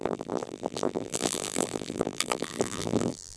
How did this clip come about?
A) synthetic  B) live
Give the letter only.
A